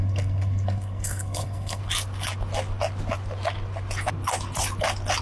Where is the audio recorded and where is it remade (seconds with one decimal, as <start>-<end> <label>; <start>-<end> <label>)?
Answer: 0.0-1.8 remade; 1.8-5.2 recorded